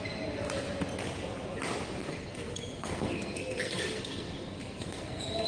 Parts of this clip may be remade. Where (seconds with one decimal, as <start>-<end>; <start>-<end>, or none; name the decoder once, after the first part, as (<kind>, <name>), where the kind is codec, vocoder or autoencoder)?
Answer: 2.0-5.5 (codec, SNAC)